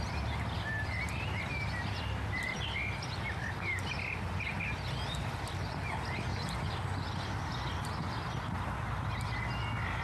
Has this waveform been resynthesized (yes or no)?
no